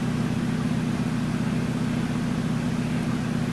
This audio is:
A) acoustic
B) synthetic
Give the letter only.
A